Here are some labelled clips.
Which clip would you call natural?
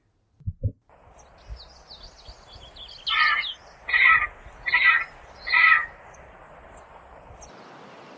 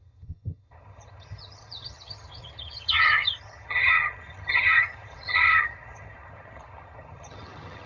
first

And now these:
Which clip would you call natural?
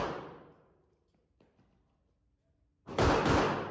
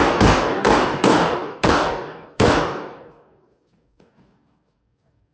first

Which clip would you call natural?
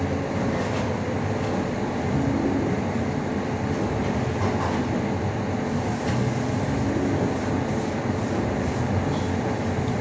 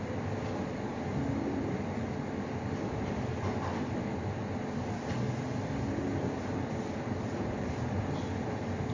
first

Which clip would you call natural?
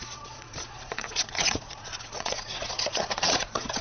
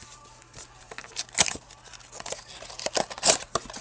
second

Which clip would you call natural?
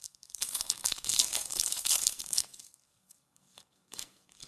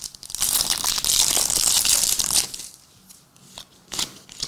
second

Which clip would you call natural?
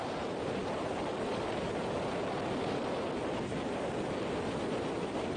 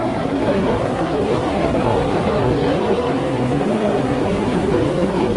first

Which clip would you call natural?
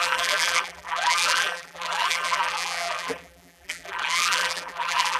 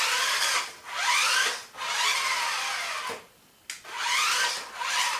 second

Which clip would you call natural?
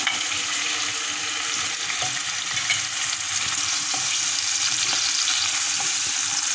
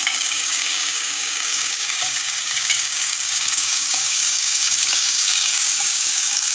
first